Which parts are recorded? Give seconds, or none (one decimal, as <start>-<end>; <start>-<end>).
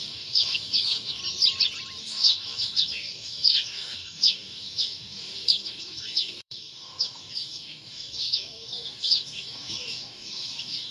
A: 1.2-2.0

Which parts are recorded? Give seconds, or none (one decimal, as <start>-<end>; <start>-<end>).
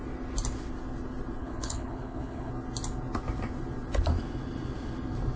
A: 0.0-1.4; 2.5-5.4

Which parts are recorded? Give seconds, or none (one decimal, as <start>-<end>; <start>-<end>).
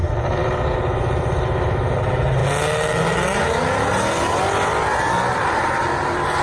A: 2.4-5.0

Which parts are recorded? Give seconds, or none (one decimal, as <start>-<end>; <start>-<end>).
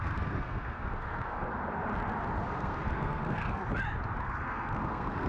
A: 1.5-2.5; 3.6-4.2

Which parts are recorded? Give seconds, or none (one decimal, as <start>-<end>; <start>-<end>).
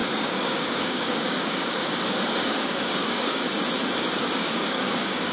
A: 3.5-4.2